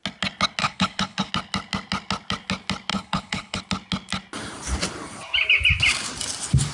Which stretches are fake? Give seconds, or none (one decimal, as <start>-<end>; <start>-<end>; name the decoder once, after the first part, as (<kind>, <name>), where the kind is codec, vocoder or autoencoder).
0.6-1.3 (codec, HILCodec); 2.9-3.6

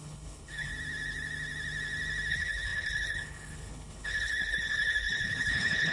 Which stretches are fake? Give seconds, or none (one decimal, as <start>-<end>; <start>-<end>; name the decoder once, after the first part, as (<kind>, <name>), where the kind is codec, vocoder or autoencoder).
0.0-0.7 (codec, HILCodec); 2.3-5.9